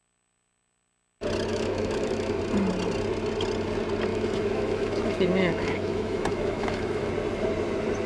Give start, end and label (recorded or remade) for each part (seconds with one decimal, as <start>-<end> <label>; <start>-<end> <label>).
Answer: 0.0-1.5 recorded; 1.5-2.4 remade; 2.4-4.1 recorded; 4.1-7.1 remade; 7.1-8.1 recorded